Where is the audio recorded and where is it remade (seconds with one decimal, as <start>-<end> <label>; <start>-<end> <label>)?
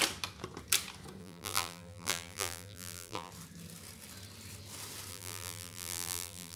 0.0-1.2 recorded; 1.2-3.3 remade; 3.3-5.1 recorded; 5.1-6.6 remade